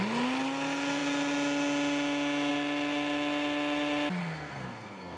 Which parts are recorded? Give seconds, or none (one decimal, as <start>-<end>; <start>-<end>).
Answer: 0.0-4.2